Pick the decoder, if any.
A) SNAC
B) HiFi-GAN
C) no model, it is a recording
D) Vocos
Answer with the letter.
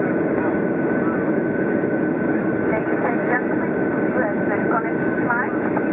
C